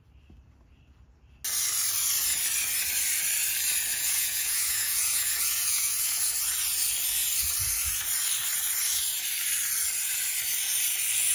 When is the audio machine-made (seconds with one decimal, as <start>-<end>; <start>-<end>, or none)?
3.9-6.3